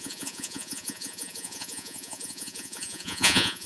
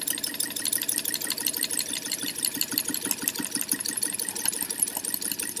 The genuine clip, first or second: second